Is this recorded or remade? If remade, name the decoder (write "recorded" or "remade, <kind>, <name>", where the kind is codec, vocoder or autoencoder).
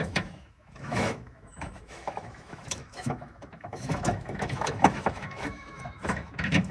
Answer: remade, autoencoder, DAC-VAE